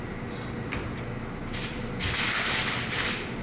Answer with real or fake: real